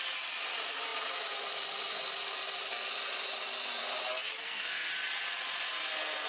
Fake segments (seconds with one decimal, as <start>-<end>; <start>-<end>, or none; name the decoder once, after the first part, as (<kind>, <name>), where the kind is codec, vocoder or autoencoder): 4.4-4.9 (codec, SNAC)